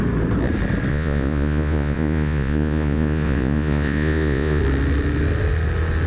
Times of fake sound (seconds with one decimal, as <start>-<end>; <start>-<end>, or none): 0.9-4.6